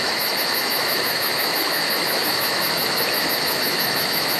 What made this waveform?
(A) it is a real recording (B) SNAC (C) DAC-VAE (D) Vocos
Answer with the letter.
C